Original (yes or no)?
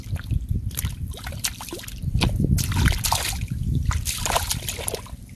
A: no